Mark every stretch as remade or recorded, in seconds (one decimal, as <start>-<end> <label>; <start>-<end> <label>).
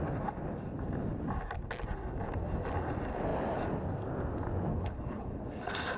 0.0-4.7 recorded; 4.7-5.4 remade; 5.4-6.0 recorded